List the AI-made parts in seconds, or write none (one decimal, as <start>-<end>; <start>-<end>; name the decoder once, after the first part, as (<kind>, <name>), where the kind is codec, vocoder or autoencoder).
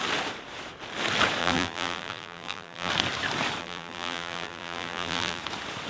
1.4-2.9 (vocoder, BigVGAN v2); 3.6-5.4